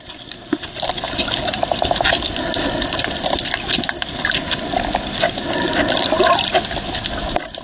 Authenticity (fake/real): real